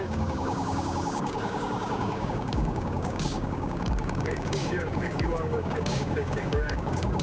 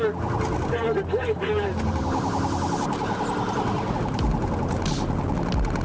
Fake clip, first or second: first